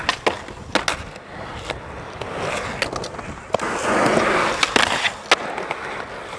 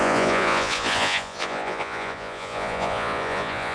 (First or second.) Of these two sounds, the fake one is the second